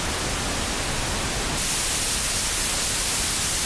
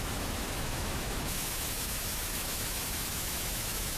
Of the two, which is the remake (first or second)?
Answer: second